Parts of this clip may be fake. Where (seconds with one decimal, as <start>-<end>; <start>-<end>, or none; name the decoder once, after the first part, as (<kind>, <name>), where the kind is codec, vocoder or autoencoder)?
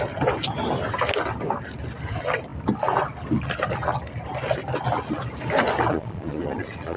5.9-7.0 (vocoder, Vocos)